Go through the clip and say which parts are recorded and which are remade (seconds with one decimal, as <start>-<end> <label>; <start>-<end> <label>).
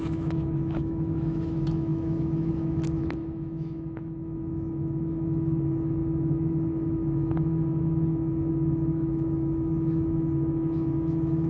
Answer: 0.0-11.5 remade